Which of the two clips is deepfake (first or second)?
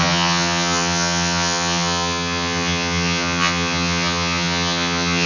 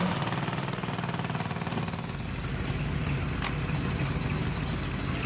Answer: first